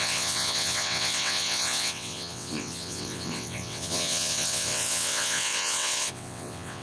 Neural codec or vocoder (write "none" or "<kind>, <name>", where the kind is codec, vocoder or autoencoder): vocoder, WaveNeXt